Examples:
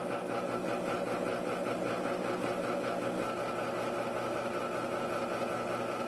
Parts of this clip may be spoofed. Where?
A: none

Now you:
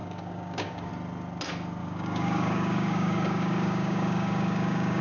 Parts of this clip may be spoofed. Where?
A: 0.0-0.9 (codec, DAC); 1.8-5.0

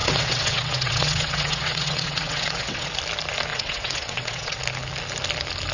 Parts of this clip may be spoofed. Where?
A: 0.0-2.9 (vocoder, WaveNeXt); 3.5-4.6

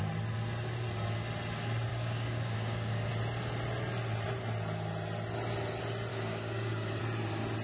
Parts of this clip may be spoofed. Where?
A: 1.9-3.1 (codec, DAC); 6.1-7.0

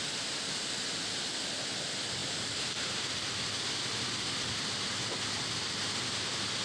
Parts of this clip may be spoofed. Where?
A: none